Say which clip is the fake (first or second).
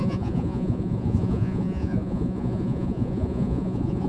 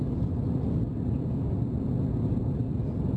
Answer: first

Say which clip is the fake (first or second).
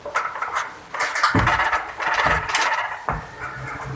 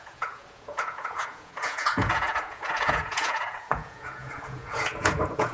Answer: second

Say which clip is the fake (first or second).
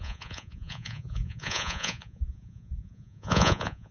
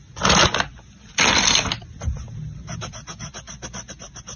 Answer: first